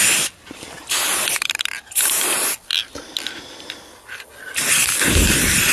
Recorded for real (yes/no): yes